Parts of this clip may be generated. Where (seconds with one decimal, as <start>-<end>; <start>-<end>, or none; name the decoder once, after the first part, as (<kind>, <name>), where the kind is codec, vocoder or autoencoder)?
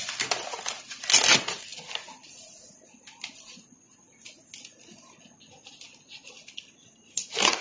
none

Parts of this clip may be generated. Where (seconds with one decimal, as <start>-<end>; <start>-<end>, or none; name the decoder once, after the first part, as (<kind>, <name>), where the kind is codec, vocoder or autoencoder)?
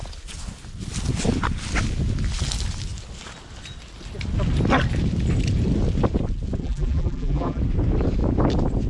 6.6-7.6 (vocoder, BigVGAN v2)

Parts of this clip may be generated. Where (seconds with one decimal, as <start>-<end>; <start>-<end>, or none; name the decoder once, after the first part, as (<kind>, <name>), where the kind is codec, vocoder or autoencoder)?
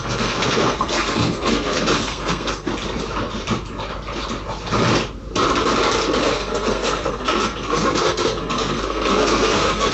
0.0-2.7 (codec, SNAC); 6.2-9.9